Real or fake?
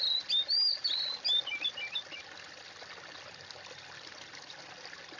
real